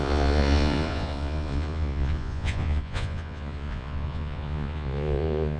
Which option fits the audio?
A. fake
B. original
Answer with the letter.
A